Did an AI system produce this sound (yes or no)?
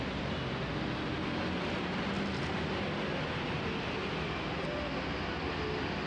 no